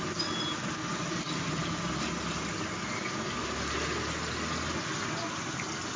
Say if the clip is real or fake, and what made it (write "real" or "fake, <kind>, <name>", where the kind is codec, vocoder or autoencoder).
real